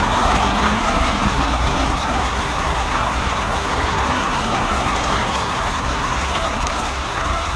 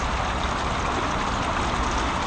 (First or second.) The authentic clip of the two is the second